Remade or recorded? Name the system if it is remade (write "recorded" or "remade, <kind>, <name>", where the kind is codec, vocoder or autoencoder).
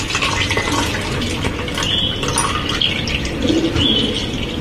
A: recorded